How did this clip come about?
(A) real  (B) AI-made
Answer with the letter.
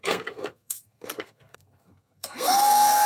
B